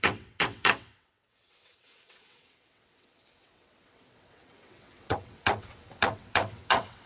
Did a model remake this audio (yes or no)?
yes